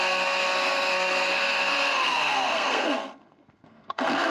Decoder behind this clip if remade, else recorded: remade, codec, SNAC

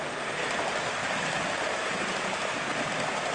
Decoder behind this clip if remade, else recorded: remade, vocoder, BigVGAN v2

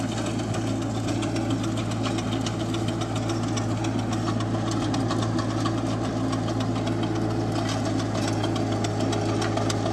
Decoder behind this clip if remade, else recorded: recorded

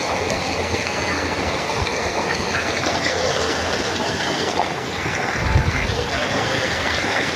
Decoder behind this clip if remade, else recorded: remade, codec, SNAC